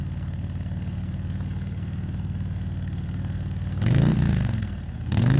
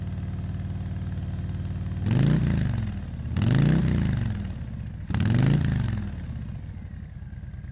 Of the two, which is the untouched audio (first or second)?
second